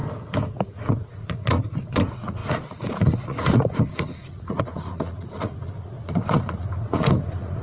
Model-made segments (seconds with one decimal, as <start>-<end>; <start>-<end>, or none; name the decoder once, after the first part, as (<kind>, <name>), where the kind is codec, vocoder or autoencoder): 0.7-7.6 (vocoder, Vocos)